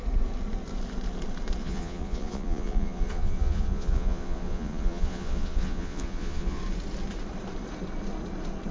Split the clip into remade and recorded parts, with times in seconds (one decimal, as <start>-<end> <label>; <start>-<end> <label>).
0.0-1.6 recorded; 1.6-6.6 remade; 6.6-8.7 recorded